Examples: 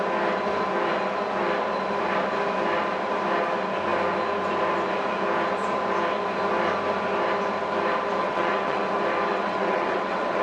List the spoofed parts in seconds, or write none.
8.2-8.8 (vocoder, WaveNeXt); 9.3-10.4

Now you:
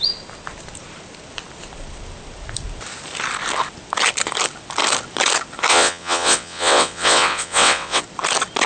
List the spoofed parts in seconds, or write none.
5.7-8.0 (vocoder, WaveNeXt)

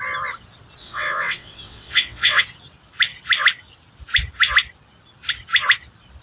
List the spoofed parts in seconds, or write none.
0.8-2.4 (vocoder, WaveNeXt)

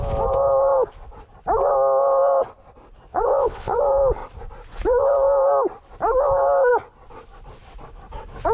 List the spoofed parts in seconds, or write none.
3.1-3.8 (vocoder, WaveNeXt)

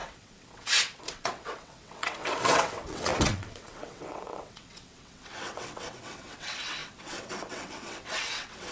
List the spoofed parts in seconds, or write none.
0.0-8.7 (vocoder, WaveNeXt)

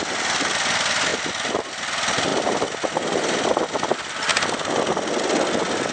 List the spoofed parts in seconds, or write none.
none

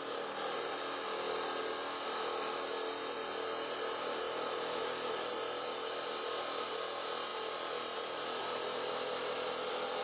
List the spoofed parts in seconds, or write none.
none

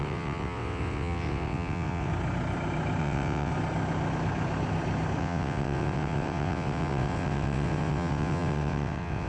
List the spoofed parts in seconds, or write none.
0.0-2.1 (vocoder, WaveNeXt); 3.0-3.5; 5.2-9.3